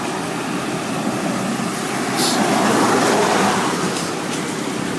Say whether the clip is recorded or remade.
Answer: recorded